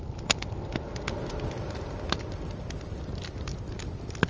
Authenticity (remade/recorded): recorded